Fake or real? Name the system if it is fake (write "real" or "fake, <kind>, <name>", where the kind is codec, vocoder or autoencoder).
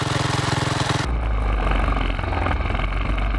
real